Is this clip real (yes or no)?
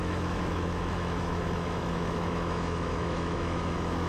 no